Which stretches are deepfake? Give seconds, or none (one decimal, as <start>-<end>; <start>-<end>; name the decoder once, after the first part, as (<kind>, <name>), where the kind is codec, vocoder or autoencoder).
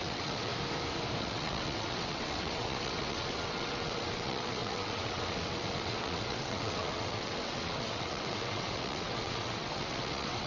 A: 0.0-0.5 (vocoder, WaveNeXt); 1.2-10.5